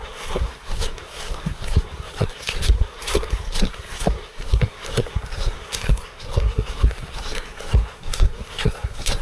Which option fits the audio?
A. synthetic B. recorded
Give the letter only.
A